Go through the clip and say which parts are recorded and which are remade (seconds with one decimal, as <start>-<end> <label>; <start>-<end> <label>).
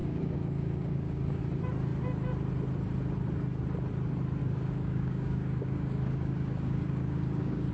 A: 0.0-1.4 remade; 1.4-4.4 recorded; 4.4-7.7 remade